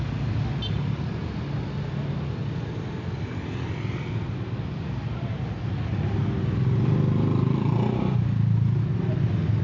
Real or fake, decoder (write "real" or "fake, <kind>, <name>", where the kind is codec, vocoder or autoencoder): real